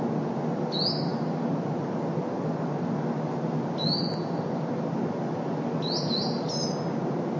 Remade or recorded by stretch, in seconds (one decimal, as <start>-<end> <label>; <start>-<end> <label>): 0.0-7.4 recorded